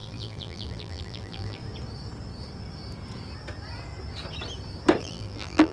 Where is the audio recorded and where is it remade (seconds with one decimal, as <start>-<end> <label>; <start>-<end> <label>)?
0.0-1.6 remade; 1.6-5.0 recorded; 5.0-5.7 remade